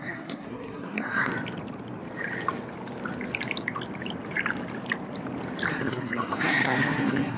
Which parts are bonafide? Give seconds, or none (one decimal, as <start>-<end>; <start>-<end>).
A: 1.3-5.7